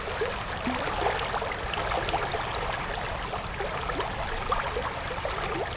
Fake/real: real